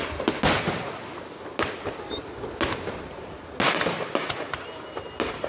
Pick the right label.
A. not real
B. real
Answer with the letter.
B